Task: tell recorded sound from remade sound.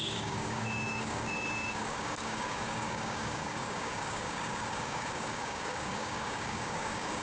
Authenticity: remade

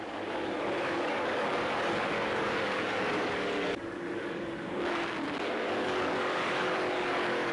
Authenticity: remade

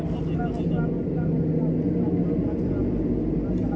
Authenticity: recorded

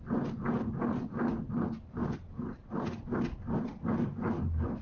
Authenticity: recorded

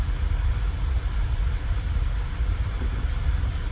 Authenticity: recorded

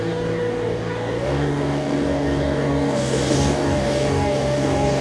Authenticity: remade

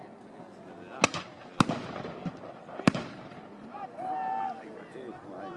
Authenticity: recorded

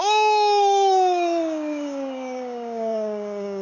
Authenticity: remade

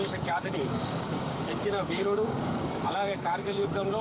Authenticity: remade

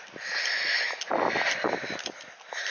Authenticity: recorded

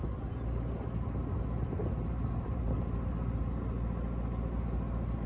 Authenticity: recorded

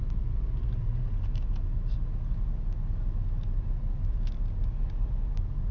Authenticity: recorded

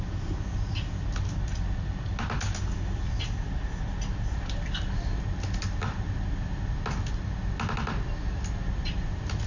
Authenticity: recorded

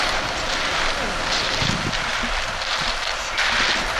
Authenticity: recorded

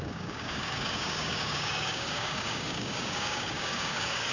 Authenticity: remade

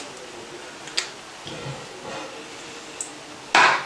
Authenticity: recorded